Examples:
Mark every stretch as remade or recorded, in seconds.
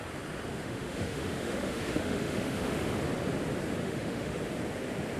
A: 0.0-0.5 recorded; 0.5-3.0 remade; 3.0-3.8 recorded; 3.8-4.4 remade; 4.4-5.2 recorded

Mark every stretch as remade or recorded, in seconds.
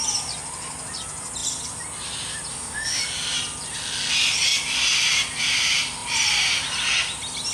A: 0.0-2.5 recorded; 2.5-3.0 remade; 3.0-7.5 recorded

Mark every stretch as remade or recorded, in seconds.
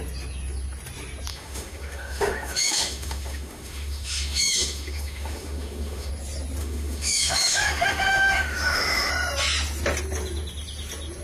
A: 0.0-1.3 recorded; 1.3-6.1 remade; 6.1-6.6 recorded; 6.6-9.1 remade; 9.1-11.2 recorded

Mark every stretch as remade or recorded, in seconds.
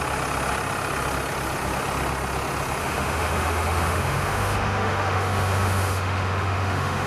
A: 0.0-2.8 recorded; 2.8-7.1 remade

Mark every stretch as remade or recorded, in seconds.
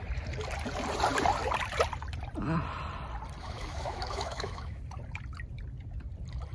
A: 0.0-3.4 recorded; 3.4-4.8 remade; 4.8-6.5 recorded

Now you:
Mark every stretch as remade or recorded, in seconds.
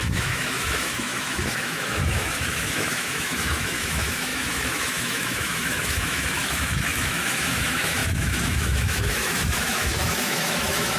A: 0.0-11.0 remade